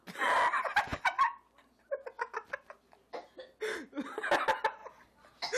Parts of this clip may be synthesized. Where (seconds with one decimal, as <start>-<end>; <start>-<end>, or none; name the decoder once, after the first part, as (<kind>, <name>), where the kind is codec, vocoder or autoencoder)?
none